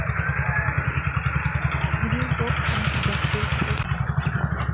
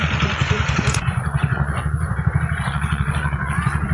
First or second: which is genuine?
first